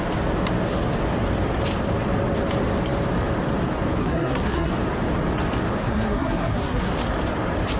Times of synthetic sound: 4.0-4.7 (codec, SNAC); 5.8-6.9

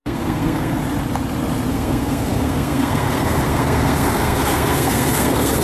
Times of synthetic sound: 0.0-0.8 (codec, SNAC); 1.7-5.6

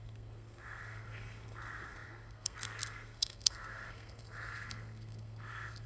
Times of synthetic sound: 0.0-5.9 (codec, SNAC)